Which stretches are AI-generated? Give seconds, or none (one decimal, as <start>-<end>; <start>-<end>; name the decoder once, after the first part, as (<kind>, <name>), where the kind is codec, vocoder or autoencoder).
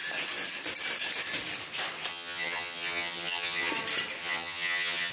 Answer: 2.1-3.7 (vocoder, HiFi-GAN); 4.2-5.1